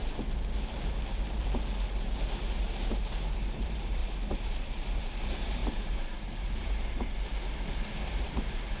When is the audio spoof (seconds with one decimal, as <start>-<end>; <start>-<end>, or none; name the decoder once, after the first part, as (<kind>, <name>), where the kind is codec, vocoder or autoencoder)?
1.1-4.0 (vocoder, BigVGAN v2); 5.0-5.6; 6.2-7.3; 8.1-8.8